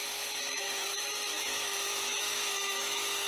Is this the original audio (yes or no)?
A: no